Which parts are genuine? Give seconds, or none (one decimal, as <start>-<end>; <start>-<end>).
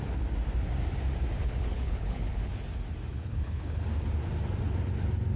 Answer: 0.0-1.4; 2.5-3.1; 3.8-5.4